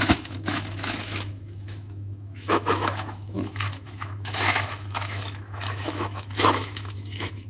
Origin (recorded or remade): remade